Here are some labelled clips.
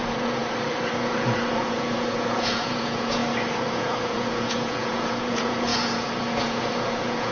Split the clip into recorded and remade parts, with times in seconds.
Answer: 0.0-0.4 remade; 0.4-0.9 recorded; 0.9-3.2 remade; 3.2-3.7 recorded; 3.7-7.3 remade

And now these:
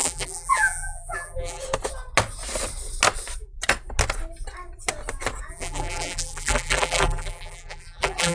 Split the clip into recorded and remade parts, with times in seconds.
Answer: 0.0-1.6 remade; 1.6-5.5 recorded; 5.5-8.3 remade

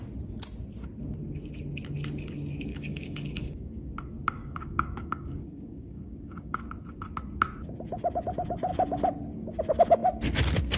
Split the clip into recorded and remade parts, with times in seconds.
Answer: 0.0-2.7 recorded; 2.7-3.9 remade; 3.9-4.4 recorded; 4.4-6.6 remade; 6.6-10.8 recorded

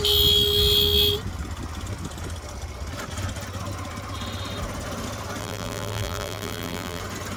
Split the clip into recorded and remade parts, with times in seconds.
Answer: 0.0-5.4 recorded; 5.4-7.0 remade; 7.0-7.4 recorded

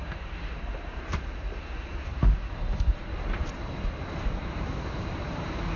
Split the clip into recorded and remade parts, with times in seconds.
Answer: 0.0-5.8 remade

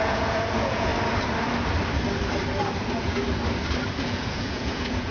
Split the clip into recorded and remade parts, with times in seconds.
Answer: 0.0-0.9 remade; 0.9-4.0 recorded; 4.0-5.1 remade

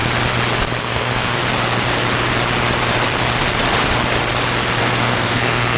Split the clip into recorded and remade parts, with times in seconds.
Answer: 0.0-0.8 recorded; 0.8-1.4 remade; 1.4-4.8 recorded; 4.8-5.8 remade